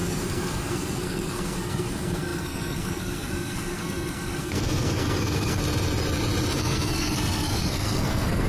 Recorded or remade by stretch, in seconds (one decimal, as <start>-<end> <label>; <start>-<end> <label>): 0.0-5.6 remade; 5.6-6.6 recorded; 6.6-8.5 remade